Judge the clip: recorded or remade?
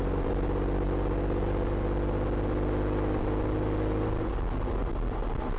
recorded